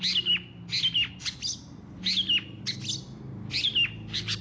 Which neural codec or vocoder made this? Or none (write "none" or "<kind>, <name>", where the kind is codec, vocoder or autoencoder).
none